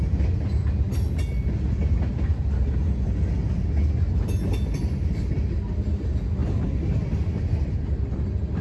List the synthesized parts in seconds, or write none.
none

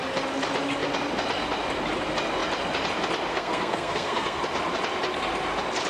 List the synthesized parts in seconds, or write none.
3.3-4.4 (codec, SNAC)

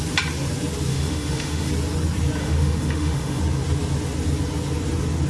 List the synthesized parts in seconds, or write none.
0.9-1.7 (autoencoder, DAC-VAE); 2.4-3.4

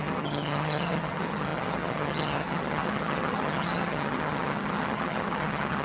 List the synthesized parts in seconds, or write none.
0.0-5.8 (vocoder, HiFi-GAN)